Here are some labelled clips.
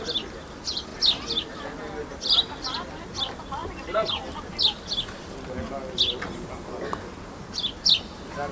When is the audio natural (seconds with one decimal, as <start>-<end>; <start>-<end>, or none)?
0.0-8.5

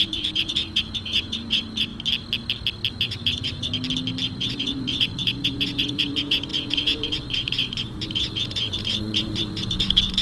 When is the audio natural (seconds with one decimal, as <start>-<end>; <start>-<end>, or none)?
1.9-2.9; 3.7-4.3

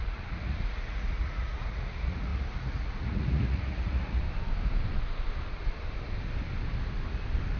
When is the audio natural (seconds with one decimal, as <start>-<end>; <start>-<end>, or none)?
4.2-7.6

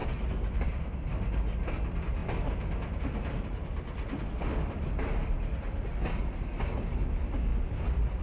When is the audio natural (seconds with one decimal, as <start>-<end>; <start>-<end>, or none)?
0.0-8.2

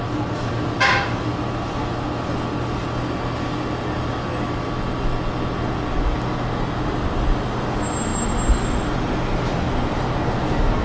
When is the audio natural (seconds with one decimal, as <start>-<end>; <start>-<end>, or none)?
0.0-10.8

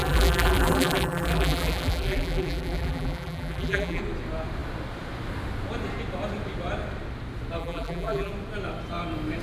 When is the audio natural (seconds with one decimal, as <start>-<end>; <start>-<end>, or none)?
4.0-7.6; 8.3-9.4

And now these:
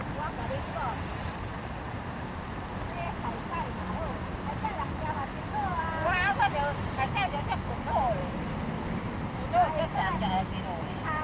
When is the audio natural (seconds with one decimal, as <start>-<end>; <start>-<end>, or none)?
0.0-1.5; 2.7-5.7; 6.4-11.2

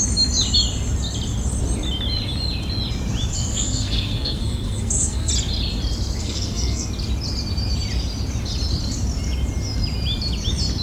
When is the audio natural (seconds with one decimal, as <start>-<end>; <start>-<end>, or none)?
0.0-3.3; 5.3-6.2; 6.9-10.8